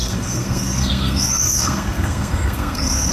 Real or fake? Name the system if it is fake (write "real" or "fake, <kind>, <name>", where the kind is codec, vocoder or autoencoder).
fake, codec, SNAC